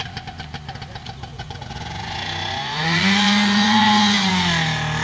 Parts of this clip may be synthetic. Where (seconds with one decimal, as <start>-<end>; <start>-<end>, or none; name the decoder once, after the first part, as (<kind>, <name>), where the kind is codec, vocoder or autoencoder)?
1.3-4.3 (vocoder, Vocos)